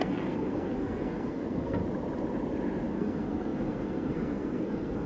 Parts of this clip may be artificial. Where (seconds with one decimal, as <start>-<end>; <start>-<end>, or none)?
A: 0.0-1.8; 2.9-5.1